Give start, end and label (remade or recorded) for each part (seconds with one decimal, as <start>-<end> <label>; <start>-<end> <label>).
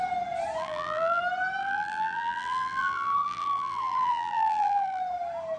0.0-0.6 recorded; 0.6-1.2 remade; 1.2-1.6 recorded; 1.6-5.0 remade; 5.0-5.6 recorded